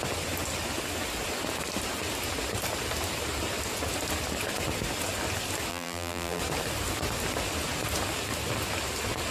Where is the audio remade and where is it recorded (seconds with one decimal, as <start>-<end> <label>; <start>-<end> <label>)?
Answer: 0.0-5.7 recorded; 5.7-6.4 remade; 6.4-9.3 recorded